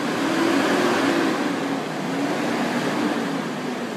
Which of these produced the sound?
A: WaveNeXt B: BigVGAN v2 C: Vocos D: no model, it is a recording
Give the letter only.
D